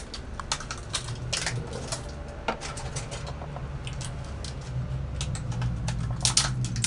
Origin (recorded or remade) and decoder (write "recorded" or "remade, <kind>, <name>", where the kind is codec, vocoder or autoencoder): recorded